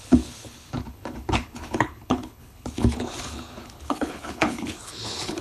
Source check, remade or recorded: remade